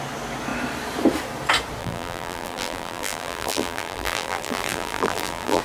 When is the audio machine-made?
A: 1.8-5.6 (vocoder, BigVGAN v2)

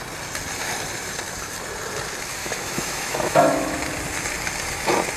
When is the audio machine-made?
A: 2.4-3.8 (autoencoder, DAC-VAE)